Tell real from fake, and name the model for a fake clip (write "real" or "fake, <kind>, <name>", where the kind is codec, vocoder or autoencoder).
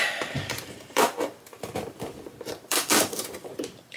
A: fake, vocoder, BigVGAN v2